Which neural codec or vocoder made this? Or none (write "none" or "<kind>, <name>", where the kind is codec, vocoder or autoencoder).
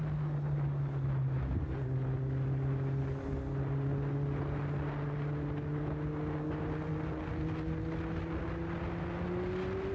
none